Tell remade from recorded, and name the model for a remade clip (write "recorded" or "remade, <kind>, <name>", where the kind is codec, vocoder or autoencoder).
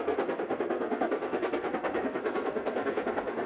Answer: remade, codec, SNAC